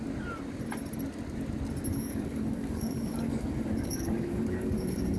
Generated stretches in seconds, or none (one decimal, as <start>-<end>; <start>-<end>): 1.9-5.2